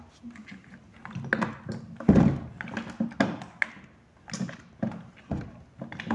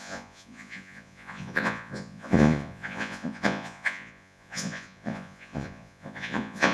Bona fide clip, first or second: first